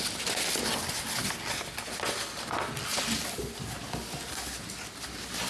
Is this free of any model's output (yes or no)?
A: yes